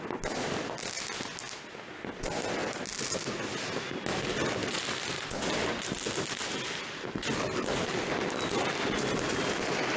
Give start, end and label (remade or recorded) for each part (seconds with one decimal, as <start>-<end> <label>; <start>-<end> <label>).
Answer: 0.0-2.6 recorded; 2.6-3.3 remade; 3.3-4.6 recorded; 4.6-5.7 remade; 5.7-10.0 recorded